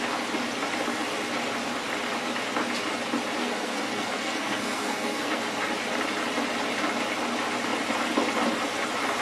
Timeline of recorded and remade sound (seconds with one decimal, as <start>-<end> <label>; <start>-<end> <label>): 0.0-3.4 recorded; 3.4-5.4 remade; 5.4-9.2 recorded